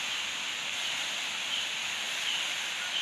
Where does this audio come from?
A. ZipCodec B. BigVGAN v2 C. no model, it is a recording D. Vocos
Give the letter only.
C